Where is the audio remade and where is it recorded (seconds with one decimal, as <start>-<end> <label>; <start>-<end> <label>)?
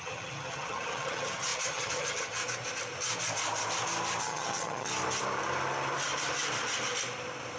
0.0-2.4 remade; 2.4-4.2 recorded; 4.2-4.9 remade; 4.9-7.6 recorded